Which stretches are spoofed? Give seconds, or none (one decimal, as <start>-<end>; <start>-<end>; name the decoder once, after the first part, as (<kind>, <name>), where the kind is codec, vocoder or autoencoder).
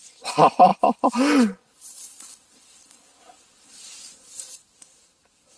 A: none